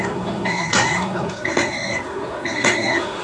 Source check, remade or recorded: remade